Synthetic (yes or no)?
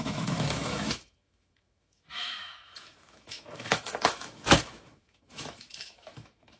yes